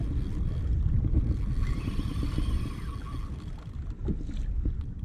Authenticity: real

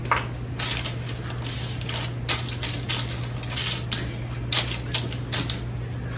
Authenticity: real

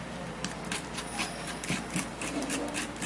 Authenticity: fake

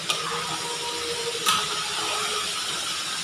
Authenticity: real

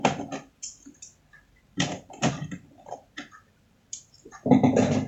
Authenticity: fake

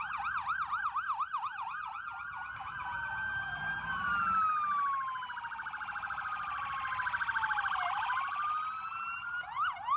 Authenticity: real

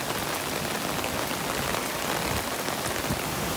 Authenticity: real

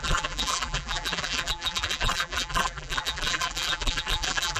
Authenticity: fake